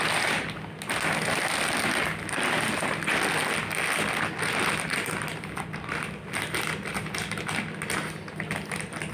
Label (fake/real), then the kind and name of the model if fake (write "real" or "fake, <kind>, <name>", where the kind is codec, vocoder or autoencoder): real